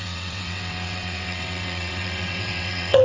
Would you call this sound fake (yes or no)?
yes